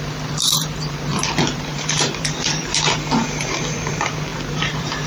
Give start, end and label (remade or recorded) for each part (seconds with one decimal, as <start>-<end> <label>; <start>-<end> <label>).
0.0-5.1 remade